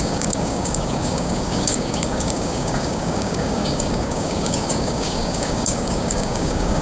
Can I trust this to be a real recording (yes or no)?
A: no